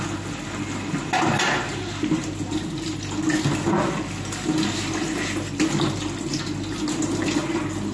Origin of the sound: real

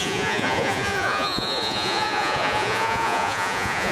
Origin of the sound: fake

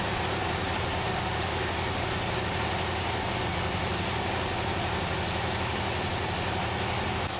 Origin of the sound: real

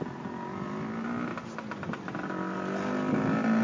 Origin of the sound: real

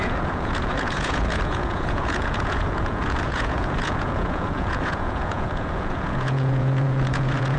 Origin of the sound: fake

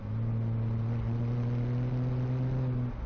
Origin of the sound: real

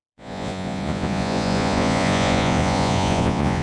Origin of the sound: fake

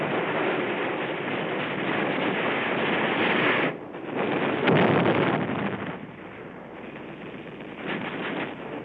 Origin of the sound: real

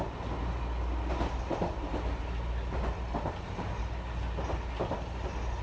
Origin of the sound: real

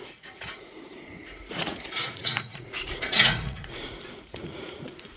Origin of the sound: fake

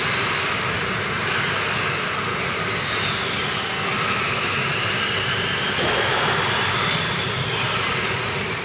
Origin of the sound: real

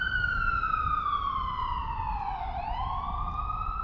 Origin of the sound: real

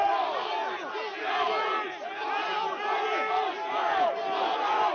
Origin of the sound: real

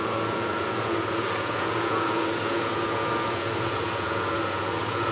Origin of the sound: fake